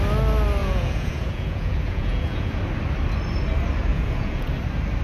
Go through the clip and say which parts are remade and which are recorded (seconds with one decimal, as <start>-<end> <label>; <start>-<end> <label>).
0.0-0.6 recorded; 0.6-2.6 remade; 2.6-3.9 recorded; 3.9-4.5 remade; 4.5-5.0 recorded